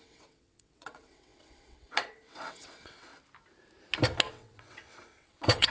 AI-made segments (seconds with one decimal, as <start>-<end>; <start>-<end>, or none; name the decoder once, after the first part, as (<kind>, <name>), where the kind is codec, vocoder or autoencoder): 0.0-3.1 (vocoder, WaveNeXt); 4.3-5.7